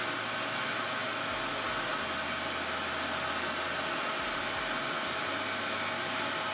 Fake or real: real